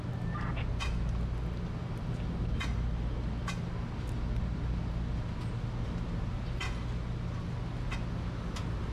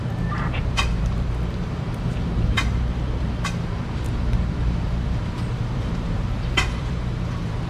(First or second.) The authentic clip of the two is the first